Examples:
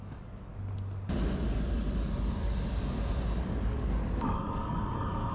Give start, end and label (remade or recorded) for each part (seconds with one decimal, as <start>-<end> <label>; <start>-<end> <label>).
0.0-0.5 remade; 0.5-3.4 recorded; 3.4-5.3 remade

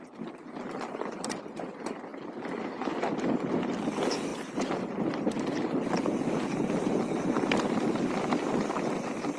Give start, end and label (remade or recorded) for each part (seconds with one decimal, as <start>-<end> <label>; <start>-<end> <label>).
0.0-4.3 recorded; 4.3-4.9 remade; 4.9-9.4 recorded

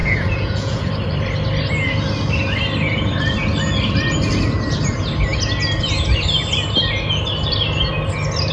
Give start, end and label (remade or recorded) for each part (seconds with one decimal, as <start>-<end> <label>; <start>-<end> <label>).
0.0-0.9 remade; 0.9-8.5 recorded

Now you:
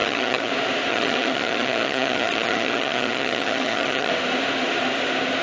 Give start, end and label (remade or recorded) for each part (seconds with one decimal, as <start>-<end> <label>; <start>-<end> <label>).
0.0-0.5 remade; 0.5-0.9 recorded; 0.9-4.1 remade; 4.1-5.4 recorded

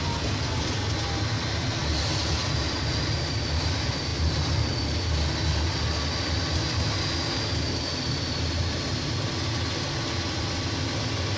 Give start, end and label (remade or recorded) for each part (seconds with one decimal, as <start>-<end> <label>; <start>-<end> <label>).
0.0-11.4 recorded

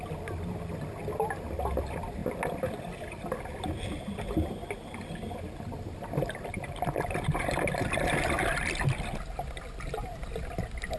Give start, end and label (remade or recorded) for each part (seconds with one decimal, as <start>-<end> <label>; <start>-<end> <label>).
0.0-11.0 recorded

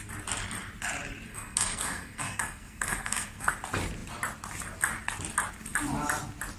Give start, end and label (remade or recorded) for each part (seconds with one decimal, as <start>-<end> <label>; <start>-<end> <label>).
0.0-1.3 recorded; 1.3-3.5 remade; 3.5-6.6 recorded

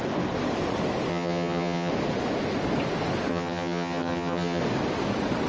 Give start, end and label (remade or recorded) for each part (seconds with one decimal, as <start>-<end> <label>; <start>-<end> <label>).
0.0-1.1 recorded; 1.1-1.9 remade; 1.9-3.3 recorded; 3.3-4.6 remade; 4.6-5.5 recorded